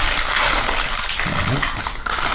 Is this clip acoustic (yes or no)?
yes